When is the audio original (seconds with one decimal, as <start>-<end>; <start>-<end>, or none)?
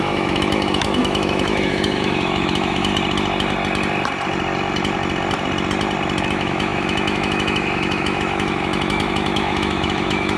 2.9-6.2